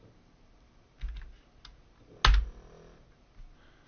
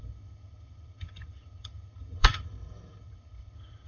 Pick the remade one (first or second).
second